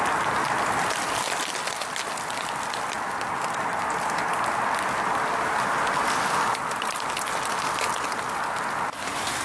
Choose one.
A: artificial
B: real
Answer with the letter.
B